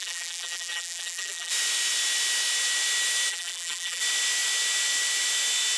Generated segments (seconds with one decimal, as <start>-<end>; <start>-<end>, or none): 0.0-1.5; 3.3-4.0